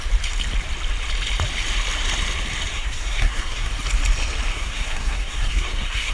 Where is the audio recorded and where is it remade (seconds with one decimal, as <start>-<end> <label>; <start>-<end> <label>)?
0.0-2.7 recorded; 2.7-3.7 remade; 3.7-4.5 recorded; 4.5-6.1 remade